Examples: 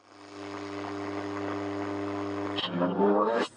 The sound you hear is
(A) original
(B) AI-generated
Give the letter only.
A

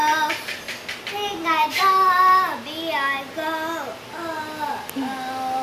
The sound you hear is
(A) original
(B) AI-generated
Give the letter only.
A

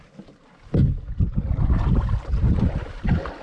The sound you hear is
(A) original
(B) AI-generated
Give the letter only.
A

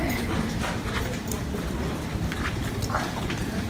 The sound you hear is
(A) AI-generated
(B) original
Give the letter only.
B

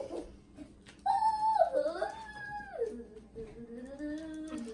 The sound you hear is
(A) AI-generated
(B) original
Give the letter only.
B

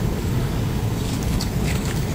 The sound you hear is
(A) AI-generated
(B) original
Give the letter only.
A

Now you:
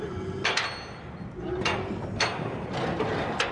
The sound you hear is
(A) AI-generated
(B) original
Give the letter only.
B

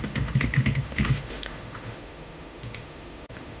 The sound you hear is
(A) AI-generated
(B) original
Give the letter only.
A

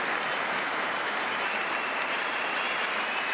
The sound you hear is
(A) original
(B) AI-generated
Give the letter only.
B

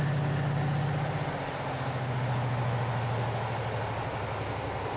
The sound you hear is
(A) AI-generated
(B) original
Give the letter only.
B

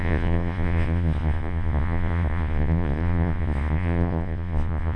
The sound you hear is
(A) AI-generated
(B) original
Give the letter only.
A